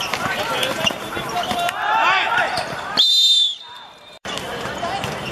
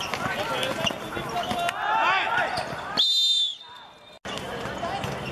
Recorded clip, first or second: second